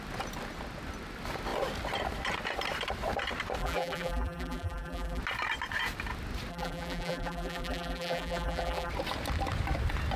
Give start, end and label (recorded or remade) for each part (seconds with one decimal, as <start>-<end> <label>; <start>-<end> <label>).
0.0-3.6 recorded; 3.6-5.2 remade; 5.2-6.5 recorded; 6.5-8.9 remade; 8.9-10.2 recorded